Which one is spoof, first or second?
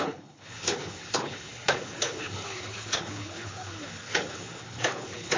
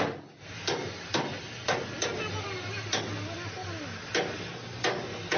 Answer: first